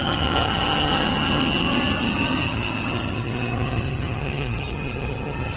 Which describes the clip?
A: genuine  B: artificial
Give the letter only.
B